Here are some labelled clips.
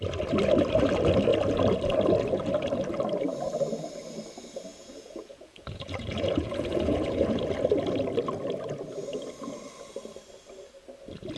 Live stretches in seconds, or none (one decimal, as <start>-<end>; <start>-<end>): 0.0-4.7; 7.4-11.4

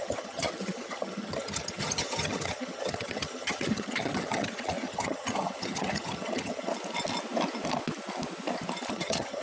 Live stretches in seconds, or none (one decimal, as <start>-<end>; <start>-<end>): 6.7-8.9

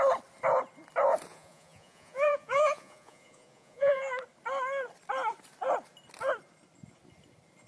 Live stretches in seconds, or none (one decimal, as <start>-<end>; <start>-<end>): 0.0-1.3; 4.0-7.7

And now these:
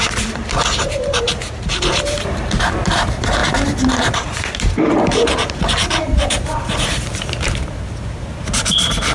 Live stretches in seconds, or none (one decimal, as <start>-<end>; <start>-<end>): 1.4-1.9